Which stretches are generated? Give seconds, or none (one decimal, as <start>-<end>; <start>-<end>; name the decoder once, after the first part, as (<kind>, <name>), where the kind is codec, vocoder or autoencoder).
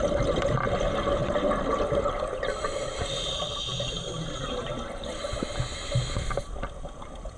none